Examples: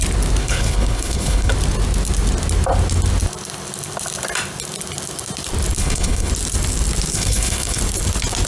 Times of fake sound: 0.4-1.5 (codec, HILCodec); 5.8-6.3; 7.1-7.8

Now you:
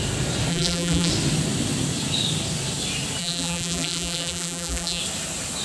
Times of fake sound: 0.5-1.1 (vocoder, BigVGAN v2); 3.2-5.0

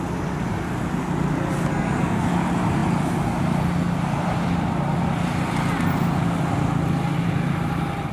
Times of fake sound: 1.7-2.3 (codec, SNAC)

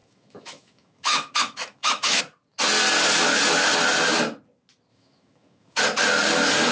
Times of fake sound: 0.0-2.2 (autoencoder, DAC-VAE); 4.9-5.8

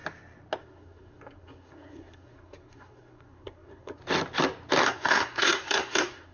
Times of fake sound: 0.6-4.0 (codec, SNAC); 4.8-6.3

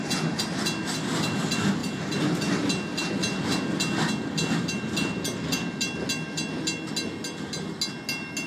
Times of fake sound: none